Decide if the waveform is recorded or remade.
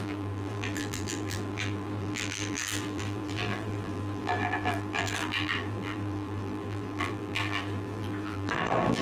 remade